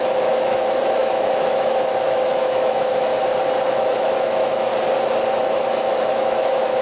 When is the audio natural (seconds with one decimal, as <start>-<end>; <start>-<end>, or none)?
3.1-3.7; 4.7-5.9